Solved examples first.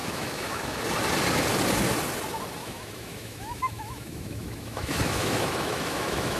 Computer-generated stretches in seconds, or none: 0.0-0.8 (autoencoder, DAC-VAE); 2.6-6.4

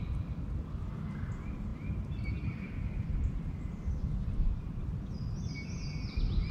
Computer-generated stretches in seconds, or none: none

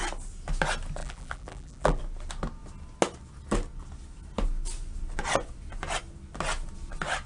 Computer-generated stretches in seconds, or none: 1.0-2.0 (vocoder, BigVGAN v2)

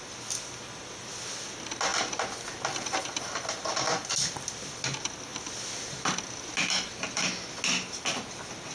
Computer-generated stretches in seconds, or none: none